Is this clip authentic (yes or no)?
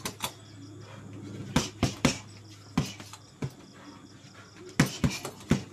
yes